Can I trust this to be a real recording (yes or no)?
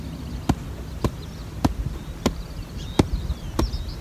yes